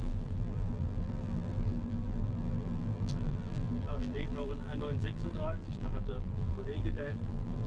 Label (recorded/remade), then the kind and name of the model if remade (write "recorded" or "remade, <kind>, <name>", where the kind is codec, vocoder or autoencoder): remade, vocoder, BigVGAN v2